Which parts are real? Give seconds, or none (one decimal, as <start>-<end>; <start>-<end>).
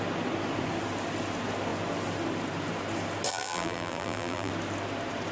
0.0-3.3; 4.5-5.3